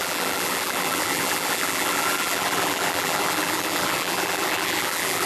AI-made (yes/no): yes